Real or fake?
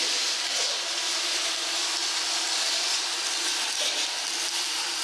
real